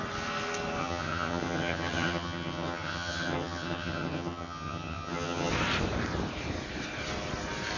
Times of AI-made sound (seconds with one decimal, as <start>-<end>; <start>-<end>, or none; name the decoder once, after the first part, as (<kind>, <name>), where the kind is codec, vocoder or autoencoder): 0.8-5.5 (vocoder, HiFi-GAN)

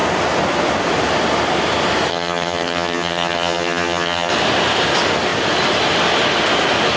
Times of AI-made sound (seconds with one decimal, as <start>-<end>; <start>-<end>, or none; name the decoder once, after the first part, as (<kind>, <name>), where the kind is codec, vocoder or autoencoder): 2.1-4.3 (vocoder, HiFi-GAN)

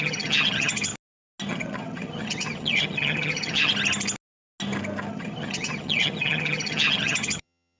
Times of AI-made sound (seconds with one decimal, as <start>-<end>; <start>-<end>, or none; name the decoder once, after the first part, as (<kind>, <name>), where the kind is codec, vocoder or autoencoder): 0.0-0.9 (vocoder, HiFi-GAN); 1.5-3.7; 5.1-7.8